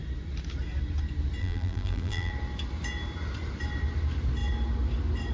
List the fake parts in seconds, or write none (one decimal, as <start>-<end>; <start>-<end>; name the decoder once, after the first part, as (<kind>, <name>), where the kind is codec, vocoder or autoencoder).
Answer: 1.4-2.3 (vocoder, BigVGAN v2)

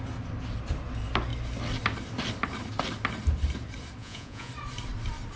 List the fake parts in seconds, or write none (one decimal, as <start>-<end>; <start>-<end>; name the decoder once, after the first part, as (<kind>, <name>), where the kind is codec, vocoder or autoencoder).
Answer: 4.0-4.5 (vocoder, Vocos)